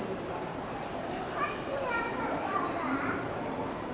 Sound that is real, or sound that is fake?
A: fake